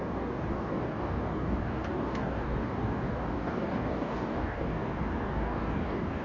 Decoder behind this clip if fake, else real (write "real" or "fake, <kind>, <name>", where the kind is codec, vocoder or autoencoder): fake, codec, DAC